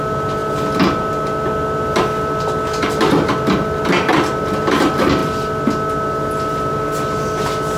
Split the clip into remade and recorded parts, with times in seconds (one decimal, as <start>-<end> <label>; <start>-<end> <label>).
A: 0.0-7.8 recorded